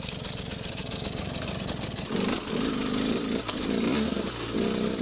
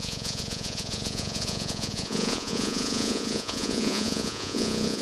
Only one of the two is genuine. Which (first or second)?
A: first